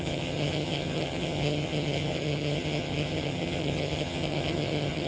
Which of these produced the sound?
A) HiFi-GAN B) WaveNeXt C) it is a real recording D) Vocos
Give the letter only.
A